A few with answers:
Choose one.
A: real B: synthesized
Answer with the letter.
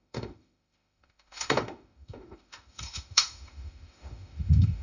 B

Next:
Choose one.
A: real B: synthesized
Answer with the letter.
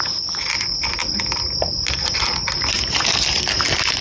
A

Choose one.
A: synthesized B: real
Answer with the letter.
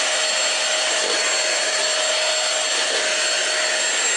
B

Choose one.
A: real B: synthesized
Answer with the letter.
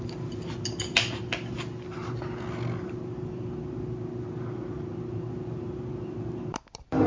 A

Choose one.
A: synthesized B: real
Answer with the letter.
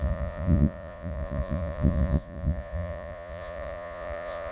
A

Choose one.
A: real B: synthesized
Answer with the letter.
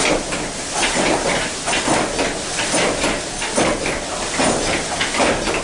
A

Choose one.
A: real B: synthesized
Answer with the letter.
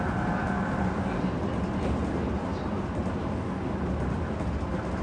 A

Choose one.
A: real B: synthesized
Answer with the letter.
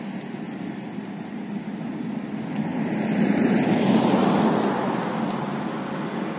A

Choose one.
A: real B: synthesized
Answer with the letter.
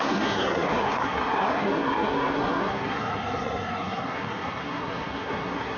B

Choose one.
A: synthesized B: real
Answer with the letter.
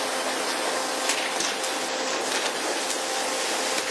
B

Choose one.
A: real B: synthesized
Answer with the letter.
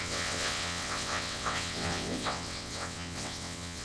B